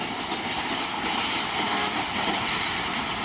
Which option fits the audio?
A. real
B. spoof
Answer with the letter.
A